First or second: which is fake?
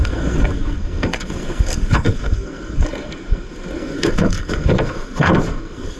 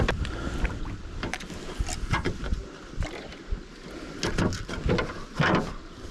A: first